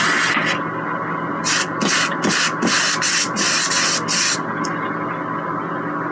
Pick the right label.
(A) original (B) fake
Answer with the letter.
A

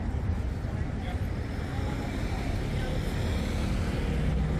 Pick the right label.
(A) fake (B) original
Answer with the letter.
B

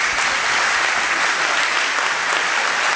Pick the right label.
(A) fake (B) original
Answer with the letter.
A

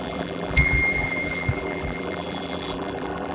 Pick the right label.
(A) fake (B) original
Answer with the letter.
A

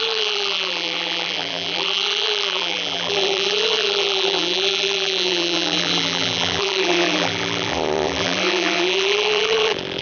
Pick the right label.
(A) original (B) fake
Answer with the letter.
B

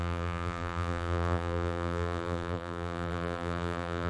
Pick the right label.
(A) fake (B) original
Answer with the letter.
A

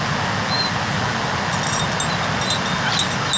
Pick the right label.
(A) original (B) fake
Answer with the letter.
A